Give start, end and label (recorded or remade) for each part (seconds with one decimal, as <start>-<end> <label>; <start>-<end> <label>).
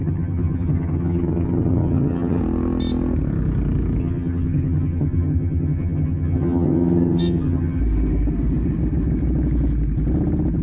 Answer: 0.0-2.4 remade; 2.4-4.0 recorded; 4.0-7.8 remade; 7.8-10.6 recorded